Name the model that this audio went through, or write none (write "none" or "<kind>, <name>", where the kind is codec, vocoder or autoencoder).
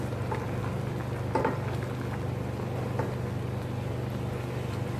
none